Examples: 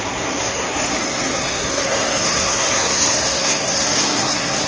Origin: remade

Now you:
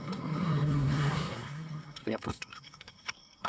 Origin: remade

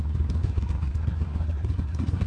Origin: remade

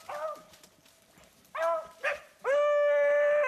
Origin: recorded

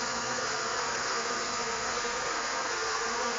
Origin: remade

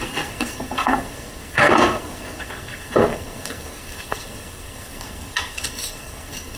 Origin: remade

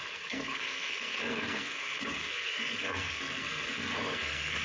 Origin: remade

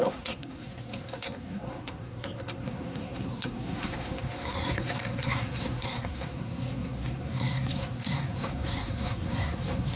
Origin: remade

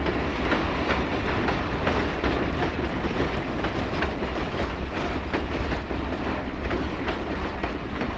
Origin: recorded